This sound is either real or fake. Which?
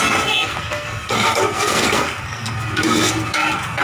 fake